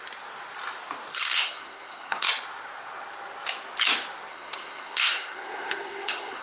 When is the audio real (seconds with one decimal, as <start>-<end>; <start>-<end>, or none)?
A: 0.0-1.1; 2.3-4.3